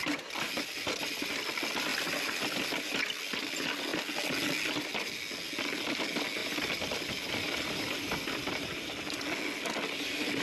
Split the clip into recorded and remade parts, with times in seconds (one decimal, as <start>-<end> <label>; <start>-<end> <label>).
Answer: 0.0-6.4 recorded; 6.4-8.5 remade; 8.5-10.4 recorded